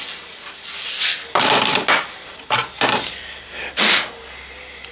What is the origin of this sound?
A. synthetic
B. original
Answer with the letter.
B